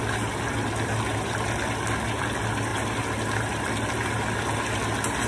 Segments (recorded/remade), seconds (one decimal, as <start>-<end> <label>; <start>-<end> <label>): 0.0-5.3 recorded